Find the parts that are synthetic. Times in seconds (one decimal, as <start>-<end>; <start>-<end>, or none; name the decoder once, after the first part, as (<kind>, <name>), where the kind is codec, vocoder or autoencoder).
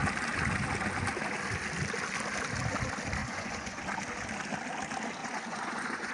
3.2-3.8 (vocoder, Vocos); 5.2-6.1